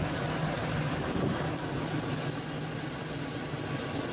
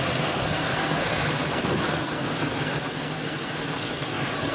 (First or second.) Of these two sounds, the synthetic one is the second